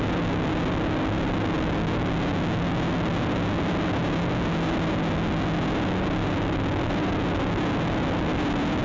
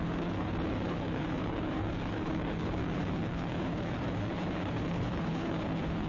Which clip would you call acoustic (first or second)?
first